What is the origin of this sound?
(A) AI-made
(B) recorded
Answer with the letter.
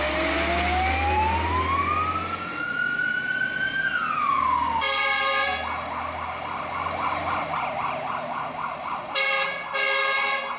B